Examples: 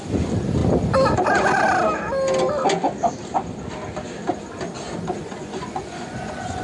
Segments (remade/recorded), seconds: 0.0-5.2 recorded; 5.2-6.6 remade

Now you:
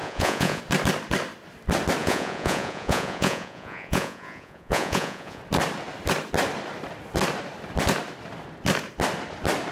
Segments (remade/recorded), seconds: 0.0-0.6 remade; 0.6-2.0 recorded; 2.0-5.4 remade; 5.4-9.7 recorded

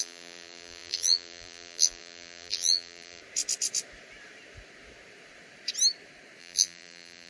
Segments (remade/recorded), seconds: 0.0-3.2 remade; 3.2-6.4 recorded; 6.4-7.3 remade

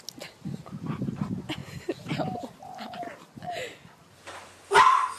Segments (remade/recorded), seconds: 0.0-5.2 recorded